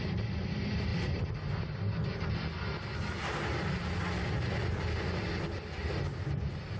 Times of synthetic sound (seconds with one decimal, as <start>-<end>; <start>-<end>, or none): none